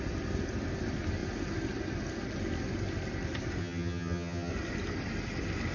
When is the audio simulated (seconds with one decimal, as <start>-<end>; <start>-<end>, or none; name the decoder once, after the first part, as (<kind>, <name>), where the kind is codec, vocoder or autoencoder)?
3.6-4.5 (vocoder, HiFi-GAN)